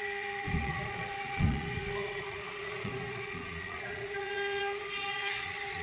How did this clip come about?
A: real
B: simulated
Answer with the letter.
B